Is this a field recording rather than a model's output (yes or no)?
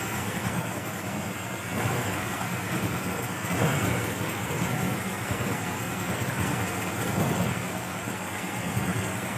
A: no